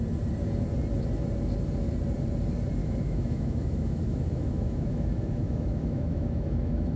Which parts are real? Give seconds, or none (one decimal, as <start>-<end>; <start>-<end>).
0.0-2.8